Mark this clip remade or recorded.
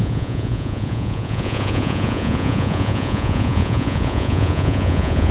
remade